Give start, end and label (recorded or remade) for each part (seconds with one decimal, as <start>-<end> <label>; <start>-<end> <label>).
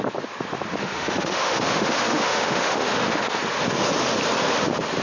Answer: 0.0-0.8 recorded; 0.8-3.4 remade; 3.4-5.0 recorded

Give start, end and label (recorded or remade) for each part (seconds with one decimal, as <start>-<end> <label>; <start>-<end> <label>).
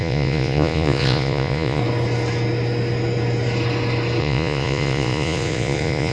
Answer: 0.0-1.8 remade; 1.8-4.2 recorded; 4.2-6.1 remade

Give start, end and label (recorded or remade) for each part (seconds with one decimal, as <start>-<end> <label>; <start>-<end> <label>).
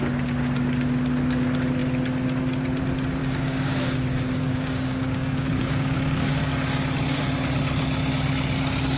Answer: 0.0-3.2 recorded; 3.2-6.3 remade; 6.3-9.0 recorded